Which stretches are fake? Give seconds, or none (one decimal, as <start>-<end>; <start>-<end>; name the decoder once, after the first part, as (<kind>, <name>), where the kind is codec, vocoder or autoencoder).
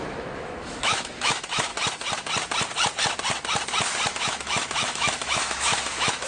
0.0-1.7 (autoencoder, DAC-VAE); 4.1-6.3